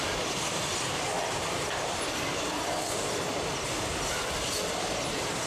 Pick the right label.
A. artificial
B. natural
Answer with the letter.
B